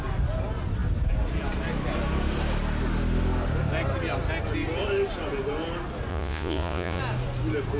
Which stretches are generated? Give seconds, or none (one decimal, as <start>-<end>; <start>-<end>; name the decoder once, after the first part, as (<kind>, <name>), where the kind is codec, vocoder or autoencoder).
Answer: 6.1-7.0 (vocoder, Vocos)